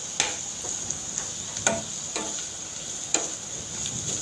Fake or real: real